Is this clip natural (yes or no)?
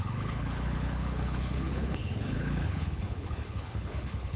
no